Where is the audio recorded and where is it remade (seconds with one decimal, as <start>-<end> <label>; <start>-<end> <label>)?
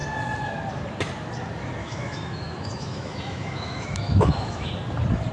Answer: 0.0-1.8 recorded; 1.8-4.7 remade; 4.7-5.3 recorded